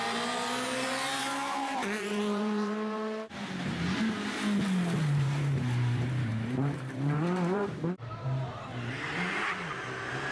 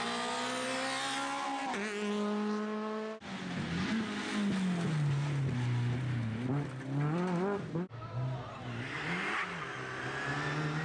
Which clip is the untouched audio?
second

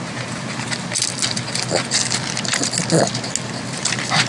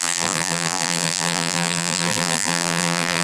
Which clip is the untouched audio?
first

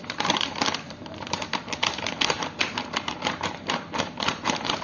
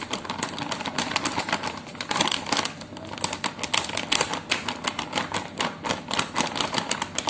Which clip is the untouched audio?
second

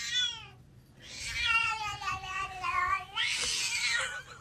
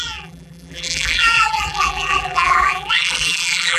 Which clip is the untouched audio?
first